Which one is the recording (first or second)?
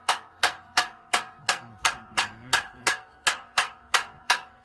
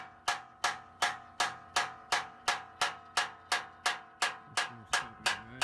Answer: second